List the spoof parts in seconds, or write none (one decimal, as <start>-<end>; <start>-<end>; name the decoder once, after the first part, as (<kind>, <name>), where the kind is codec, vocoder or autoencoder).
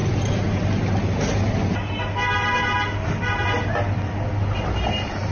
none